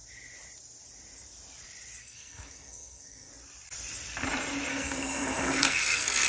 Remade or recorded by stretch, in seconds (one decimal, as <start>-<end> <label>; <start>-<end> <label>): 0.0-2.0 recorded; 2.0-3.3 remade; 3.3-4.7 recorded; 4.7-6.3 remade